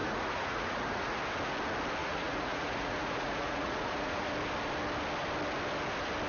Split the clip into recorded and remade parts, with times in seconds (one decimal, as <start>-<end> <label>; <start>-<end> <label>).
0.0-1.2 remade; 1.2-2.0 recorded; 2.0-4.3 remade; 4.3-6.3 recorded